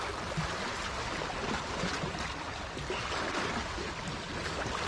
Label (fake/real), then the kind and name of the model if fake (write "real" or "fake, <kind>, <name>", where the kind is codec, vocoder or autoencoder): real